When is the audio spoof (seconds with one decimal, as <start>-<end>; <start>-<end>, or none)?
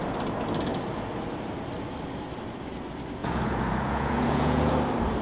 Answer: 3.2-4.7